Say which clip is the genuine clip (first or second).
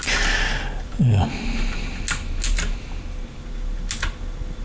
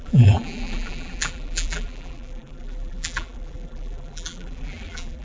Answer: first